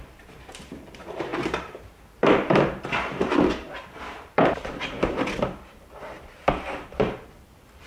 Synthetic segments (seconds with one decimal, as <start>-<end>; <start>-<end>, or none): 0.0-7.9